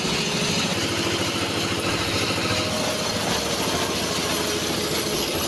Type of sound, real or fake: real